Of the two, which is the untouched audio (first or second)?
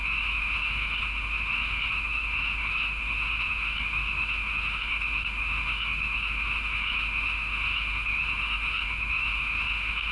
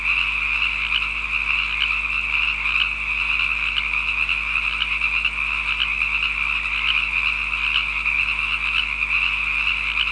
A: second